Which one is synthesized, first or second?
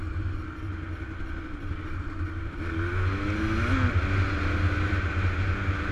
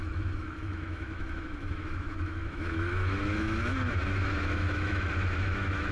second